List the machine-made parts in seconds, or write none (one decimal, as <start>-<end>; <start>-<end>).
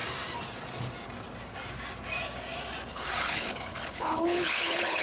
2.9-5.0